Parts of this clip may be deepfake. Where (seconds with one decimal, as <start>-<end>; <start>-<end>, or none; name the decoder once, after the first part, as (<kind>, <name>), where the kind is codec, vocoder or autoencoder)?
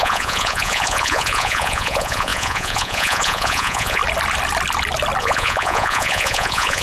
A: 0.0-4.0 (vocoder, Vocos); 5.2-6.8